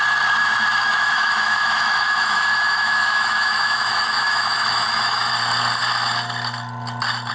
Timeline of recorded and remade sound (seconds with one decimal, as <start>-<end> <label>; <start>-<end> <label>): 0.0-0.9 recorded; 0.9-5.3 remade; 5.3-7.3 recorded